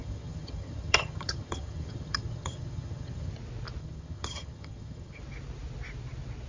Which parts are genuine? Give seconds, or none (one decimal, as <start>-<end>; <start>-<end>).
3.3-3.8; 5.2-6.5